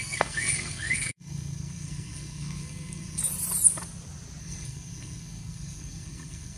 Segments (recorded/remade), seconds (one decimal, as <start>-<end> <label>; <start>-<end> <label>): 0.0-3.2 remade; 3.2-4.4 recorded; 4.4-6.6 remade